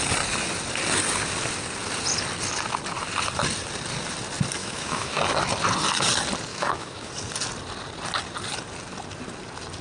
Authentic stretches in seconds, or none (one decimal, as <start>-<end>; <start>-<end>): 0.0-4.6; 5.2-6.5; 7.1-9.8